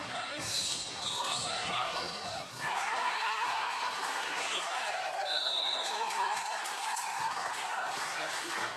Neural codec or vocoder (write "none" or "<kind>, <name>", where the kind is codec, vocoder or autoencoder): codec, SNAC